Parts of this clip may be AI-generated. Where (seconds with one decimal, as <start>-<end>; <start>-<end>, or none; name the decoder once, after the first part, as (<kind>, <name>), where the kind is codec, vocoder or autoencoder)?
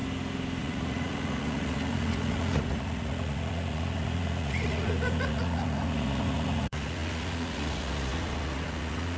0.6-9.2 (vocoder, Vocos)